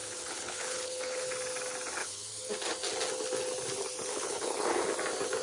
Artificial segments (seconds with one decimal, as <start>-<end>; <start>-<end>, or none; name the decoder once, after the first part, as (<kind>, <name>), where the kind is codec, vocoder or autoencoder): 0.0-1.3 (codec, HILCodec); 2.0-2.5; 4.1-4.8